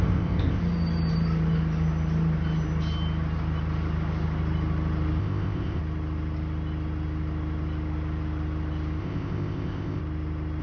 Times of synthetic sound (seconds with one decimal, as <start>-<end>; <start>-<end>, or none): 0.0-0.6; 5.2-5.8; 9.0-10.0